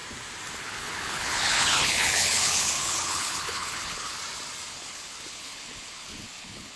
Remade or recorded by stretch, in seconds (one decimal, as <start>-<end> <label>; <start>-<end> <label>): 0.0-0.6 recorded; 0.6-4.2 remade; 4.2-4.7 recorded; 4.7-6.8 remade